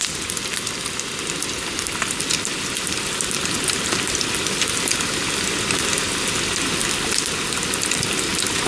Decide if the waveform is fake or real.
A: real